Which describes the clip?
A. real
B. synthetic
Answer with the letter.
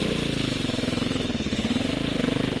A